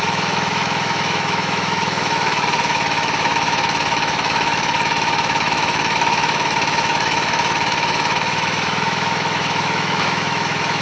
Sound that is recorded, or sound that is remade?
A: remade